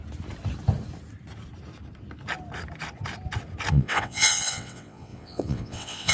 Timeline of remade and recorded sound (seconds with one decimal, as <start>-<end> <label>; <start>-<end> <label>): 0.0-3.7 recorded; 3.7-6.1 remade